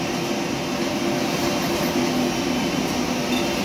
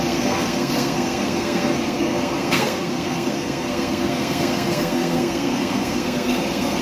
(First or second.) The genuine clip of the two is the first